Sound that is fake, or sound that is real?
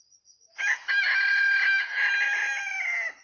real